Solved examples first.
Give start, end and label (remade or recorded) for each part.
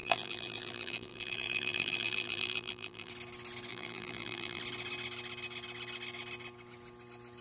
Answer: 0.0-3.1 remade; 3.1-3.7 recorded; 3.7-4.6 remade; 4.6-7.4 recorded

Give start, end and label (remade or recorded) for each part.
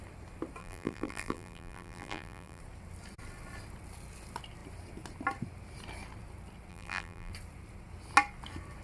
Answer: 0.0-0.6 recorded; 0.6-2.6 remade; 2.6-6.7 recorded; 6.7-7.3 remade; 7.3-8.8 recorded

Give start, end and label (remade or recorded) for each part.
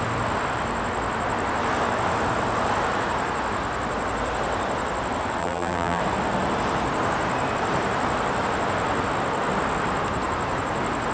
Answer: 0.0-5.4 recorded; 5.4-6.0 remade; 6.0-11.1 recorded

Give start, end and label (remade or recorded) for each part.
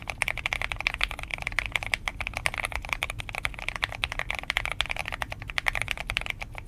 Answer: 0.0-1.3 recorded; 1.3-3.2 remade; 3.2-6.7 recorded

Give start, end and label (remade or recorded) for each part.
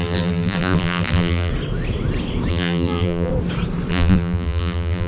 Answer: 0.0-1.5 remade; 1.5-2.5 recorded; 2.5-3.3 remade; 3.3-3.9 recorded; 3.9-5.1 remade